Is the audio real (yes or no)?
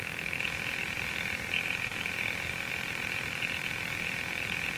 yes